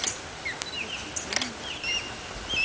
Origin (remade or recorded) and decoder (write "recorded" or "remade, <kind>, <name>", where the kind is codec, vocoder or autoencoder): recorded